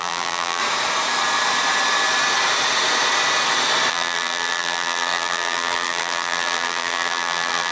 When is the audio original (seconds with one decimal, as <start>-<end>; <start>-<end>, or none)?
0.6-3.9